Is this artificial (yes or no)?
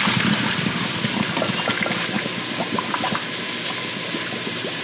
no